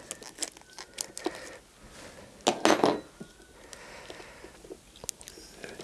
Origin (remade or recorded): recorded